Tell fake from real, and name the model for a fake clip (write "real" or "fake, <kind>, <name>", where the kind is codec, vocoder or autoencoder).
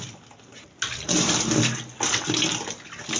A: real